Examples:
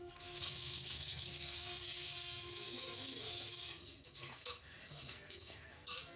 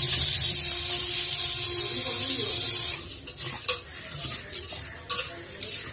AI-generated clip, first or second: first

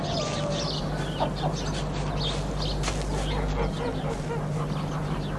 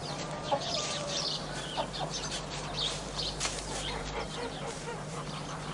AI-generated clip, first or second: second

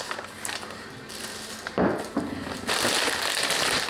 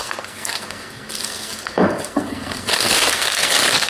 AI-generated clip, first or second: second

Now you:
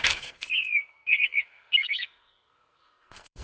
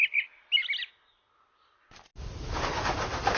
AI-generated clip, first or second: first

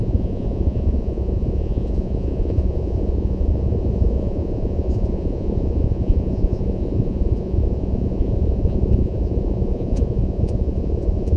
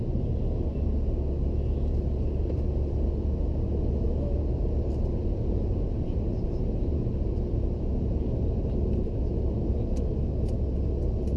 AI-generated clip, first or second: first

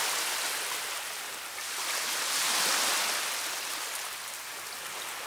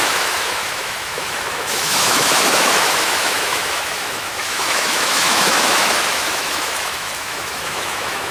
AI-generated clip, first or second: second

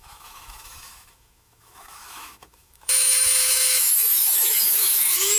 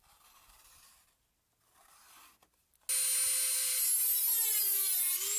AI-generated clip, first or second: first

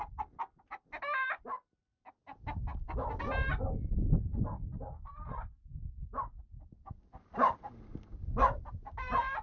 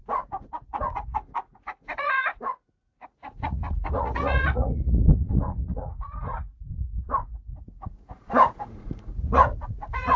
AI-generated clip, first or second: second